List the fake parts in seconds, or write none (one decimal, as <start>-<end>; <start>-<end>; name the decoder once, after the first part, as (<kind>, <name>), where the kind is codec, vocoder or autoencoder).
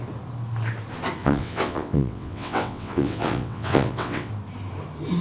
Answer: 1.2-4.3 (vocoder, WaveNeXt)